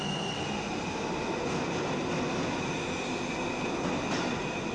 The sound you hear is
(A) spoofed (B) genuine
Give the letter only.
B